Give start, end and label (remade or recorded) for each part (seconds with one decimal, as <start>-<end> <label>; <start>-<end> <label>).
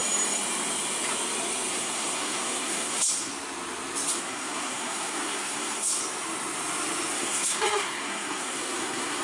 0.0-1.7 recorded; 1.7-3.3 remade; 3.3-4.1 recorded; 4.1-6.0 remade; 6.0-7.1 recorded; 7.1-9.2 remade